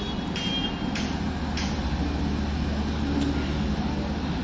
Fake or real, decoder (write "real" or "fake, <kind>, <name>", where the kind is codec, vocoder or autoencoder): real